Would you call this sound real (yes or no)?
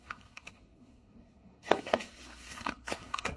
no